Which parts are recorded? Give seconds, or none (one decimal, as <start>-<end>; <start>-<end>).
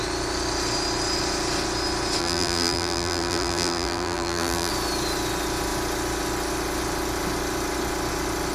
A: 0.0-2.2; 4.7-8.5